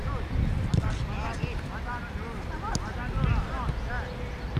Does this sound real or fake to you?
real